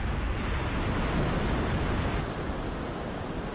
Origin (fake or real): real